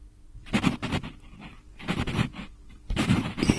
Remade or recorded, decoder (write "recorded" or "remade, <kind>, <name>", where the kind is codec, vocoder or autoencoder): remade, vocoder, BigVGAN v2